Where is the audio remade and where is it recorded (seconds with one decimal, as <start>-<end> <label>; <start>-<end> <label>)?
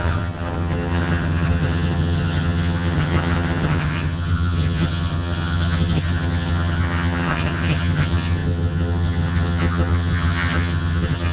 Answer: 0.0-11.3 remade